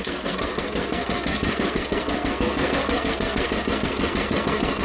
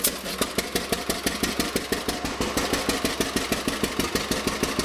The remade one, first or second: first